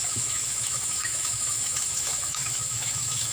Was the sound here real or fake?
fake